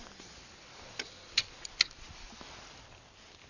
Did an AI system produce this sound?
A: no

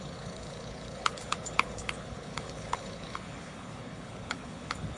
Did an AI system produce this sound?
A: yes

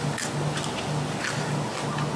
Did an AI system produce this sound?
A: no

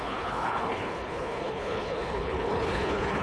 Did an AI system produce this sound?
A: yes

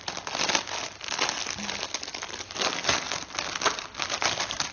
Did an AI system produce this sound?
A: no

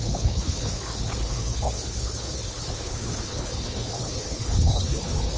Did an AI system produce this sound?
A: yes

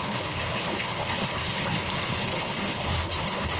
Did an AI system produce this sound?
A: yes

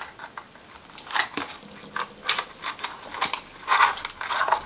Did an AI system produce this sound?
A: no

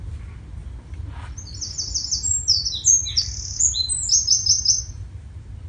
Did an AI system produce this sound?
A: no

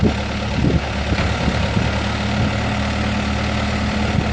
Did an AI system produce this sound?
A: no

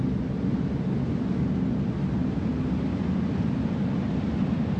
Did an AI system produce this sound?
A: no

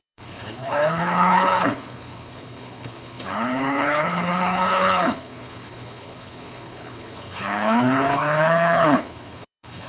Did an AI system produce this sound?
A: yes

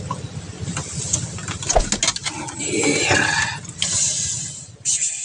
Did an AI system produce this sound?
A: no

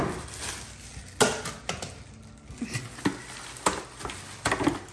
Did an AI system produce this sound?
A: no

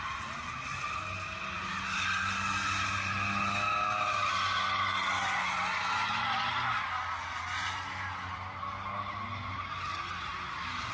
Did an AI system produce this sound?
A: no